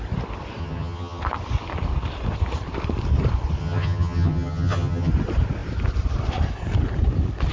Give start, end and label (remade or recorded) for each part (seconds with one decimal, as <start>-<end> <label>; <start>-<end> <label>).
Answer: 0.0-0.6 recorded; 0.6-1.2 remade; 1.2-3.6 recorded; 3.6-5.1 remade; 5.1-7.5 recorded